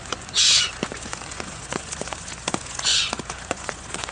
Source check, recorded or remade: remade